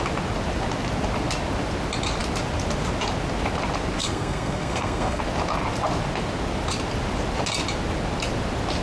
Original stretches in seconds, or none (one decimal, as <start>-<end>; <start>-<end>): 0.0-4.0; 5.2-8.8